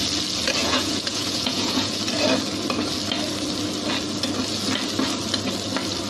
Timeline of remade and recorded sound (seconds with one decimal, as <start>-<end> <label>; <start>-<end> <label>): 0.0-0.6 recorded; 0.6-2.0 remade; 2.0-6.1 recorded

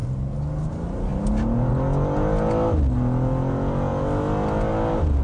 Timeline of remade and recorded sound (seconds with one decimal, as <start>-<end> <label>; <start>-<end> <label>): 0.0-5.2 recorded

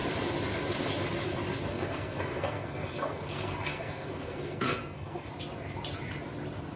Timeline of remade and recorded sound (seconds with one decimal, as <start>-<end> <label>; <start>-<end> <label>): 0.0-1.7 recorded; 1.7-5.3 remade; 5.3-6.8 recorded

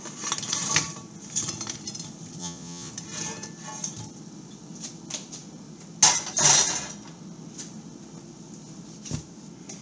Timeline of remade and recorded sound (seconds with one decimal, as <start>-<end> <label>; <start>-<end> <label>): 0.0-2.4 recorded; 2.4-2.9 remade; 2.9-9.8 recorded

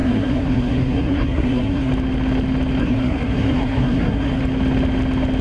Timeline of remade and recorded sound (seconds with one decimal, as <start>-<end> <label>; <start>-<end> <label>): 0.0-1.9 remade; 1.9-2.8 recorded; 2.8-4.4 remade; 4.4-5.4 recorded

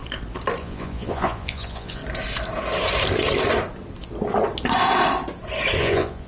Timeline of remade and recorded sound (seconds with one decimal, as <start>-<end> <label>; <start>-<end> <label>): 0.0-0.6 recorded; 0.6-2.0 remade; 2.0-5.8 recorded; 5.8-6.3 remade

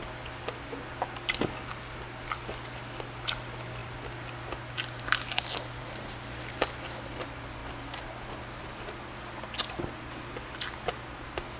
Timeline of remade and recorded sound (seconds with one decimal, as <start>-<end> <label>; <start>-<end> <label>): 0.0-11.6 recorded

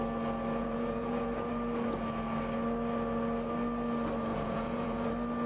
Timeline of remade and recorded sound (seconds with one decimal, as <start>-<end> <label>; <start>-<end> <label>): 0.0-0.6 recorded; 0.6-1.5 remade; 1.5-4.3 recorded; 4.3-5.1 remade; 5.1-5.5 recorded